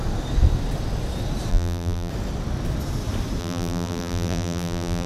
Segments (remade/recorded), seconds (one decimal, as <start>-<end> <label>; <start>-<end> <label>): 0.0-1.5 recorded; 1.5-2.1 remade; 2.1-3.4 recorded; 3.4-5.1 remade